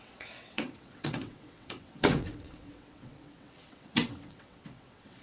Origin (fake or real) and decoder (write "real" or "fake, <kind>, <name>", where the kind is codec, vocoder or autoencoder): fake, vocoder, WaveNeXt